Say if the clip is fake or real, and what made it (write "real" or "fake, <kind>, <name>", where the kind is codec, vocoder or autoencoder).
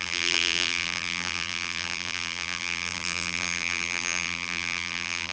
fake, vocoder, BigVGAN v2